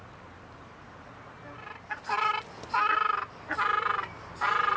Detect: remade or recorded recorded